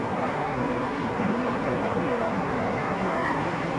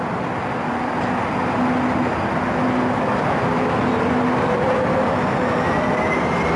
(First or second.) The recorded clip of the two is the second